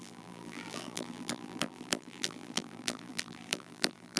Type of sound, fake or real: fake